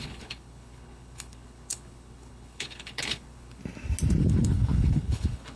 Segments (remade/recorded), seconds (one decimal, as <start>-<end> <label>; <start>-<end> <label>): 0.0-3.6 remade; 3.6-4.2 recorded; 4.2-5.6 remade